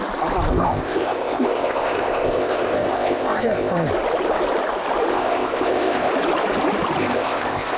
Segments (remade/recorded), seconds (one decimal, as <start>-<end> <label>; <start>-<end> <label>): 0.0-0.5 recorded; 0.5-3.9 remade; 3.9-5.1 recorded; 5.1-6.1 remade; 6.1-7.0 recorded; 7.0-7.8 remade